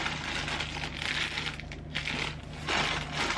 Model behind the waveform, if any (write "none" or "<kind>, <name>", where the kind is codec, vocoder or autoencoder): none